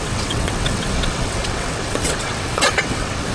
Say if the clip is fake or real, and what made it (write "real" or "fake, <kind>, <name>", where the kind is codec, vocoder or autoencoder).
fake, vocoder, WaveNeXt